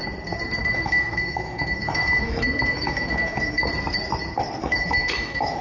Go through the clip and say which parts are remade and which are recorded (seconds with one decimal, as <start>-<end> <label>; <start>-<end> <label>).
0.0-0.6 recorded; 0.6-3.7 remade; 3.7-4.6 recorded; 4.6-5.6 remade